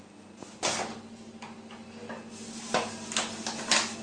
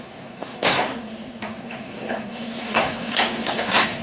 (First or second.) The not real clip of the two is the second